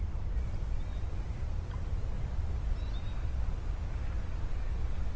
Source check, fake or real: real